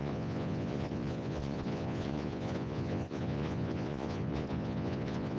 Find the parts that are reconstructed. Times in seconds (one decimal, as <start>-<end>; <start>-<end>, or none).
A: 0.0-5.4